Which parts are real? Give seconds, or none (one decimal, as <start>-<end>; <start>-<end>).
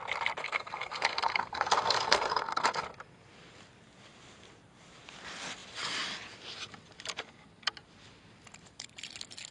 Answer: 0.0-0.4; 2.8-9.5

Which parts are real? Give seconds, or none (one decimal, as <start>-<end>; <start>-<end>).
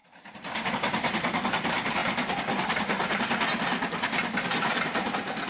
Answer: 0.0-5.5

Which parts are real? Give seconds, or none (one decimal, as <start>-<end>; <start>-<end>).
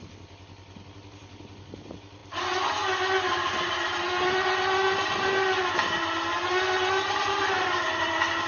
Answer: 0.0-8.5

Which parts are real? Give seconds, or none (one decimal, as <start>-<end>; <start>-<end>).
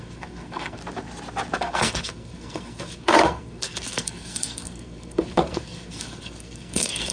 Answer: 0.8-1.6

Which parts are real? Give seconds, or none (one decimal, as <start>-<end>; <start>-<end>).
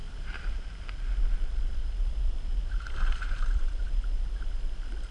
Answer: 0.6-1.8; 4.4-5.1